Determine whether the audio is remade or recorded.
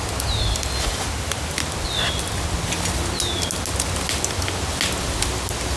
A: recorded